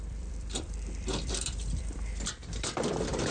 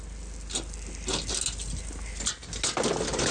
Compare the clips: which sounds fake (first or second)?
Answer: first